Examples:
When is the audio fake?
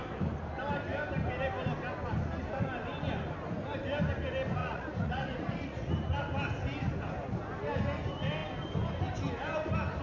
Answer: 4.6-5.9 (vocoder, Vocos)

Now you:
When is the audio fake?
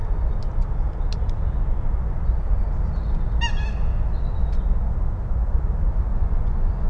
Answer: 6.1-6.9 (vocoder, Vocos)